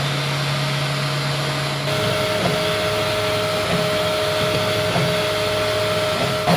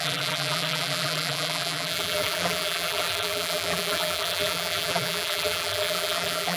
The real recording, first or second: first